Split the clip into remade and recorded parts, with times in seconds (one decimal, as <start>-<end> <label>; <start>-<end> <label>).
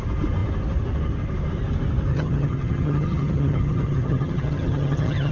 0.0-2.1 recorded; 2.1-5.3 remade